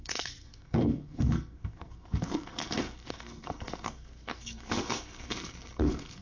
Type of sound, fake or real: fake